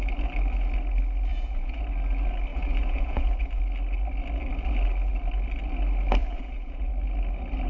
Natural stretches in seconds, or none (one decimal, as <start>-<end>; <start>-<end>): 0.0-1.3; 1.8-2.5; 3.6-6.2; 6.9-7.7